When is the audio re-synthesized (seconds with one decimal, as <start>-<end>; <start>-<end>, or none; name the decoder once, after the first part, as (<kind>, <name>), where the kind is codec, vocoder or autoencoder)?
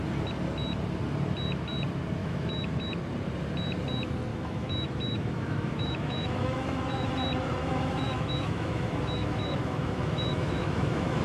2.2-2.9 (autoencoder, DAC-VAE); 4.3-7.1; 7.6-11.2